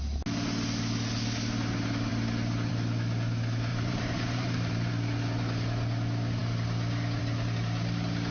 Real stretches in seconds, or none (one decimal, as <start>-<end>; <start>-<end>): 0.0-3.7; 4.9-8.3